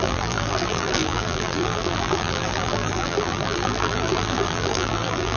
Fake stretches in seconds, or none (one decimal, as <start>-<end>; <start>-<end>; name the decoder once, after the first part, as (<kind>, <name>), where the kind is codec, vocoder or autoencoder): 0.0-5.4 (vocoder, BigVGAN v2)

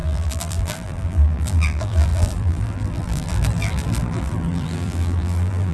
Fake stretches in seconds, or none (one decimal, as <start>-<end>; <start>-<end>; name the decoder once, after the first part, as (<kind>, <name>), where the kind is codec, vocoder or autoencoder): 0.0-5.7 (vocoder, BigVGAN v2)

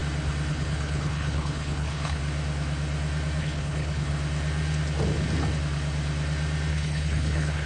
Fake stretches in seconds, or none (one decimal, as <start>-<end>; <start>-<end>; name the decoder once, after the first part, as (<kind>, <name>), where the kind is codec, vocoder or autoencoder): 0.5-2.2 (codec, HILCodec); 3.4-4.1; 6.7-7.7

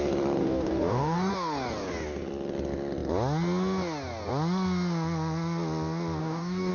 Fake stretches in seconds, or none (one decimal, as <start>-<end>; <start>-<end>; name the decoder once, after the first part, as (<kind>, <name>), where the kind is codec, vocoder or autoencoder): 0.4-1.3 (codec, DAC); 6.2-6.7